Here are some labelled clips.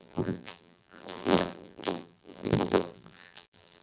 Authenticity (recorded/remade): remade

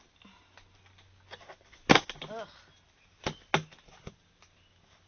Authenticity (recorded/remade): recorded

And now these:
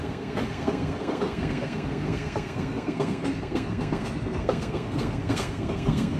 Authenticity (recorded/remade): remade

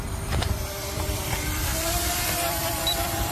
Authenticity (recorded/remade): remade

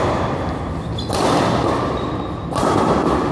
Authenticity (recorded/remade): recorded